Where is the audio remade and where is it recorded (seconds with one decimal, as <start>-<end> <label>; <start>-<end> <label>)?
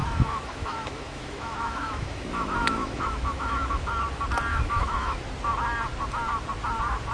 0.0-3.9 remade; 3.9-4.5 recorded; 4.5-5.2 remade; 5.2-7.1 recorded